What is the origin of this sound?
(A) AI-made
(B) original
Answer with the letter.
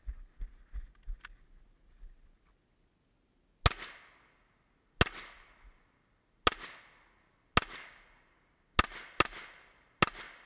B